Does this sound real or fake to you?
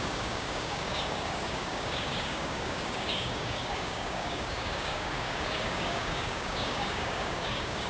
fake